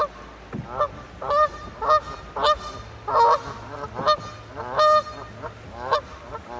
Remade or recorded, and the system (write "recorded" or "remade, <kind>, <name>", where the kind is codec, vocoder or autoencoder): recorded